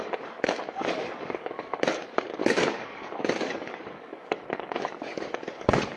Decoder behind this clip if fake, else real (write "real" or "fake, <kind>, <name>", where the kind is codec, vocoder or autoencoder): fake, codec, DAC